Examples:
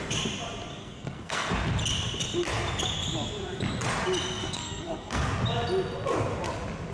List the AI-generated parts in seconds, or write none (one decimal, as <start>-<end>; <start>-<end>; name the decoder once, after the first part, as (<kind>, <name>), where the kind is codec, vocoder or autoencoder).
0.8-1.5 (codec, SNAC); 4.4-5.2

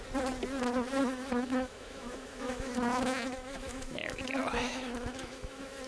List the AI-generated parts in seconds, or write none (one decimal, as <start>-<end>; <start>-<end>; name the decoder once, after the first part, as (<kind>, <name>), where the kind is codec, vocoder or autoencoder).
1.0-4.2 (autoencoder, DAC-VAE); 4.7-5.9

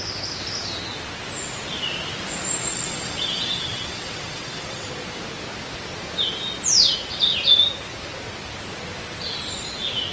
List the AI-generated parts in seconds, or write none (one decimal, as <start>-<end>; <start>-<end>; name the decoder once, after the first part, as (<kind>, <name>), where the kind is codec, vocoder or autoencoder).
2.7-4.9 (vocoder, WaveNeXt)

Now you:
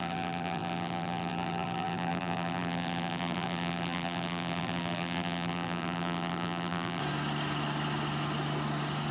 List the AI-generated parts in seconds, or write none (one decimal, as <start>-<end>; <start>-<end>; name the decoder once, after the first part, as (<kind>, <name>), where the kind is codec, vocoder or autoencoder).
0.0-7.0 (vocoder, BigVGAN v2)

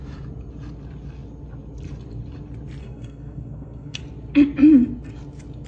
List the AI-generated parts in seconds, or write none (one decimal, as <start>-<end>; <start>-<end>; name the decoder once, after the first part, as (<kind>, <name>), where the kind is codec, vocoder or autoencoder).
2.8-4.0 (codec, SNAC)

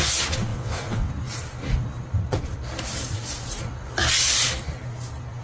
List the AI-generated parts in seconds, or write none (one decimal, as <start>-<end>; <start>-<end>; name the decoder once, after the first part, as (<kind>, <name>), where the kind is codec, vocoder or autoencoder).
0.5-1.1 (vocoder, WaveNeXt)